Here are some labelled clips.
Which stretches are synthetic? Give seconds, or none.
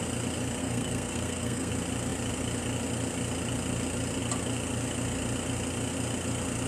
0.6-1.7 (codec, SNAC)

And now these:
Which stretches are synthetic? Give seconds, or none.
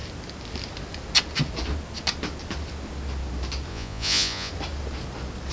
3.7-4.5 (vocoder, Vocos)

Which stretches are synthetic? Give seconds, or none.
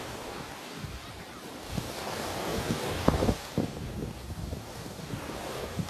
0.0-1.0 (codec, DAC); 1.6-5.9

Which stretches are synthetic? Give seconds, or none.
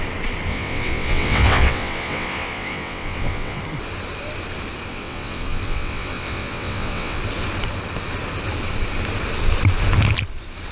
0.5-3.6 (vocoder, WaveNeXt); 4.9-7.2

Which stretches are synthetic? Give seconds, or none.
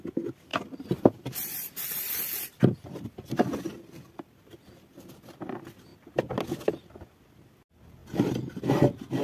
0.5-5.4 (vocoder, BigVGAN v2); 8.0-8.6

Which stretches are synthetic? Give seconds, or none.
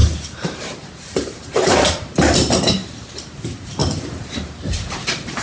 0.0-5.4 (vocoder, BigVGAN v2)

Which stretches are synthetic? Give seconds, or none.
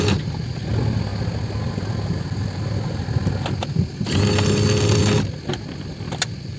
none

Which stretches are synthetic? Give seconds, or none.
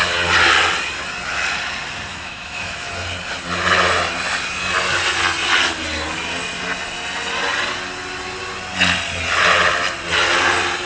2.1-2.9 (autoencoder, DAC-VAE)